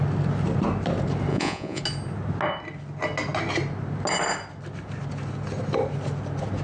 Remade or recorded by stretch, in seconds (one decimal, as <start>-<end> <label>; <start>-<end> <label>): 0.0-1.3 recorded; 1.3-1.8 remade; 1.8-6.6 recorded